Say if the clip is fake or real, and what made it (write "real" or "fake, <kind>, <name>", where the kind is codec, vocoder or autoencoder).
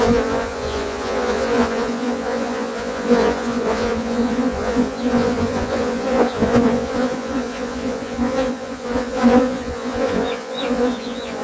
fake, vocoder, Vocos